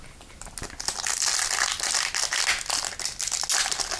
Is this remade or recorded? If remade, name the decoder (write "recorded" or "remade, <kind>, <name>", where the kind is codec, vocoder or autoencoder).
recorded